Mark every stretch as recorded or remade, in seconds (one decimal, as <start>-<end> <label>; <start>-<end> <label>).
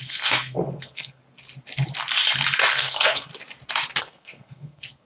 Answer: 0.0-1.2 remade; 1.2-2.7 recorded; 2.7-3.3 remade; 3.3-4.0 recorded; 4.0-5.1 remade